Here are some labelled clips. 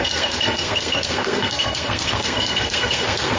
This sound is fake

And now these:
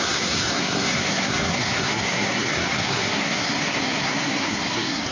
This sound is fake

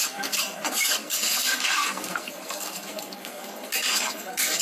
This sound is fake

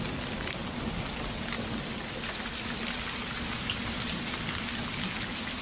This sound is real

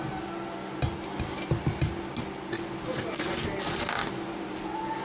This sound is real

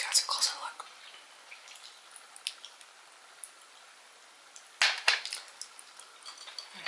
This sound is real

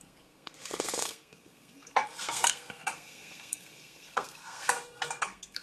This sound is fake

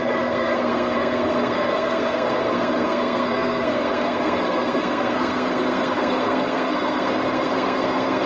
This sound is fake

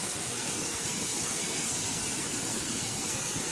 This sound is fake